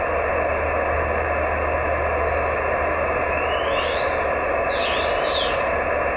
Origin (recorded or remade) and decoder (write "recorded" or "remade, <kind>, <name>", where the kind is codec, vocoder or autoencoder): recorded